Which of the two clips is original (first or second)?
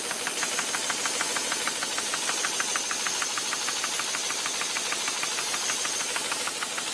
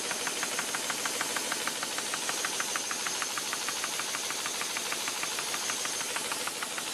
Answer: first